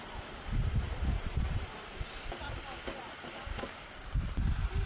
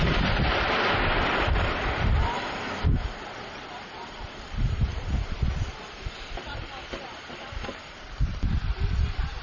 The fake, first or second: second